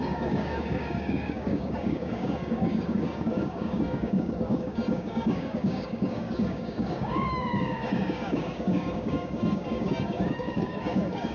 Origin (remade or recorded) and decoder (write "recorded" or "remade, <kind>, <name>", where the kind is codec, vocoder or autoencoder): remade, codec, DAC